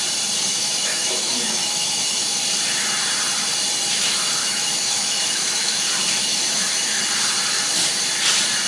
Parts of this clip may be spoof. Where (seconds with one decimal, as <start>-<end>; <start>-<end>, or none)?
0.5-2.4; 4.4-5.8; 6.2-7.0